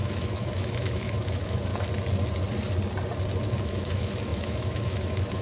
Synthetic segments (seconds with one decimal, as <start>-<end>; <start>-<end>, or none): 0.0-1.7; 3.6-5.4